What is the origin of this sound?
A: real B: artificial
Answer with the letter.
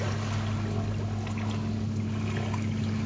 A